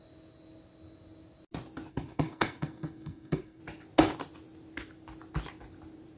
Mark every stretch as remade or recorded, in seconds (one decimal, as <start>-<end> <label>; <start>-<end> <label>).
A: 0.0-1.9 recorded; 1.9-3.6 remade; 3.6-6.2 recorded